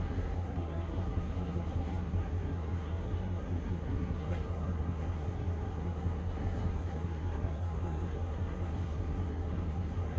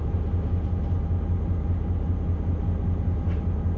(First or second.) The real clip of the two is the second